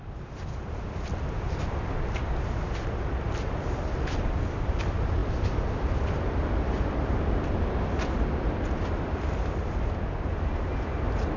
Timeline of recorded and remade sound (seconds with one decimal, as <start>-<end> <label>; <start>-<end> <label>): 0.0-11.4 recorded